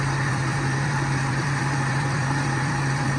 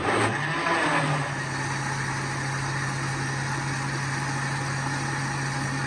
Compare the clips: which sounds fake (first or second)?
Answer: first